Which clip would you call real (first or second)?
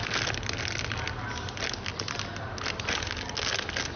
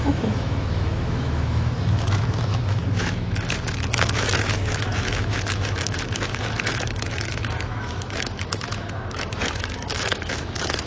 first